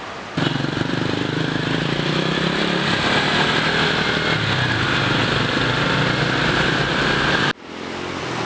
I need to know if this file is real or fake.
real